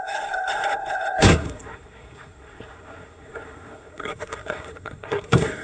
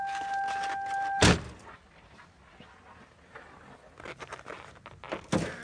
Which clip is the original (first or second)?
second